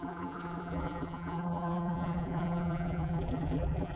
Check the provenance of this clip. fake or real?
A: fake